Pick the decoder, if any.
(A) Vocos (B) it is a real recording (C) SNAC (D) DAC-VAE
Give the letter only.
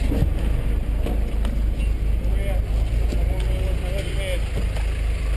B